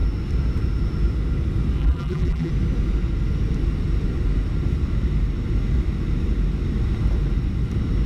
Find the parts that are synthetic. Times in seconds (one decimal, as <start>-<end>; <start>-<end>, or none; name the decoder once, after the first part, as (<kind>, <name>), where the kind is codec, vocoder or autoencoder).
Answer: 1.8-2.5 (vocoder, BigVGAN v2)

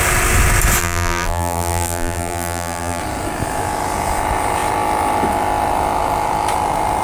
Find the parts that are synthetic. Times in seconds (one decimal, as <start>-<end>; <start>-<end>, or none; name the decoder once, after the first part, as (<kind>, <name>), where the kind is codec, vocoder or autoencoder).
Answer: 0.8-3.0 (vocoder, BigVGAN v2)

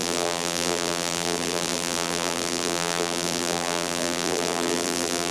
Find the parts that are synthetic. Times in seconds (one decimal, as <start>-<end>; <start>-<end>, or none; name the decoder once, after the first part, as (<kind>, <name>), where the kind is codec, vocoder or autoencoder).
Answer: 0.0-5.3 (vocoder, BigVGAN v2)